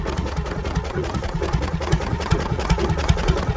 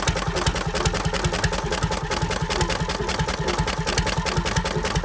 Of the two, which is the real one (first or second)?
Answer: second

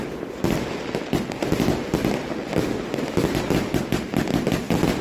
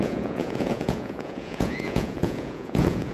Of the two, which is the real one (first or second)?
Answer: first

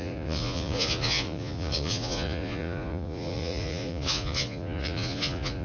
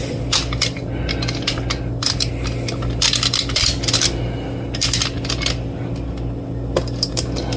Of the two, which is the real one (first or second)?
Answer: second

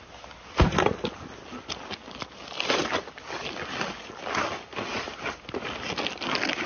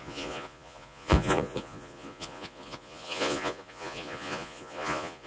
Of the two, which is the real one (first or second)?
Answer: first